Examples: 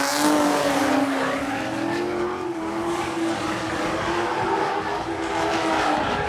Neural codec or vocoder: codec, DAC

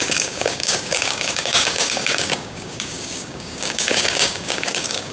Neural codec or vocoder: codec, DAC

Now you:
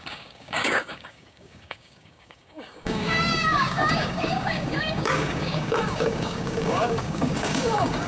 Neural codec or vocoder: codec, DAC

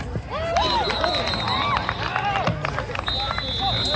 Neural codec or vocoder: none